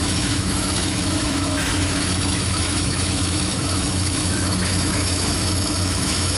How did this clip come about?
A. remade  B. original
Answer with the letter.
A